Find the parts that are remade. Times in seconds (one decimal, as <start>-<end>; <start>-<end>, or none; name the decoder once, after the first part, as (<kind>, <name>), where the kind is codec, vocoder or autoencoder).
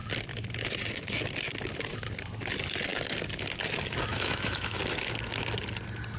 4.1-4.8 (autoencoder, DAC-VAE)